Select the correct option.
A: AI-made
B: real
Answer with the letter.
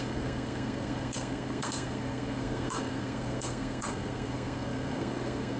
A